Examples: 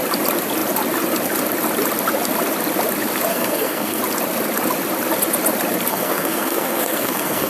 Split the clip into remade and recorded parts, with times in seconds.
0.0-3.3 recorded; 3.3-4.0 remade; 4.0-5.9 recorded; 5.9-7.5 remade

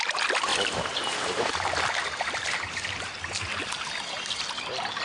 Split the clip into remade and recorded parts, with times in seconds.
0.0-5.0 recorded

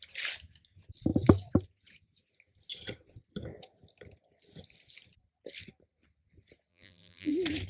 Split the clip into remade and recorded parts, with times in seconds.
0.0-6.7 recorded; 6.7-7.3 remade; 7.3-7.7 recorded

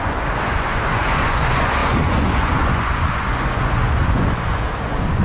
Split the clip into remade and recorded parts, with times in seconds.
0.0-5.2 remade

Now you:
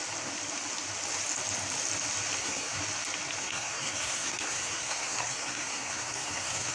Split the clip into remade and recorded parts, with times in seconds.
0.0-2.4 recorded; 2.4-2.8 remade; 2.8-3.4 recorded; 3.4-6.7 remade

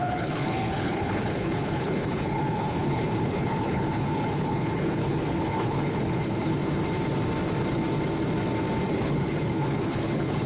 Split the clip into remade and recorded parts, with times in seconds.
0.0-6.6 remade; 6.6-8.9 recorded; 8.9-10.5 remade

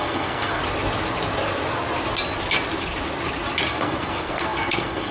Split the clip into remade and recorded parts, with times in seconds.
0.0-0.6 remade; 0.6-3.7 recorded; 3.7-5.1 remade